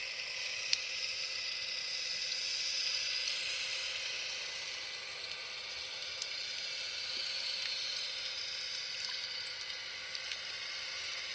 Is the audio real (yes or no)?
yes